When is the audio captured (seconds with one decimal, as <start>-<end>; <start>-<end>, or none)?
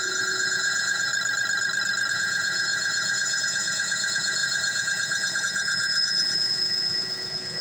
1.1-2.1